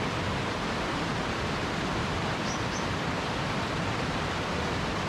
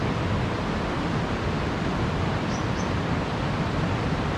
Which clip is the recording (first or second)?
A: second